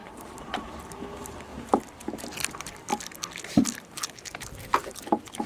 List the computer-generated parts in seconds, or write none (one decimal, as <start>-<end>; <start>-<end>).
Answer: 0.0-0.7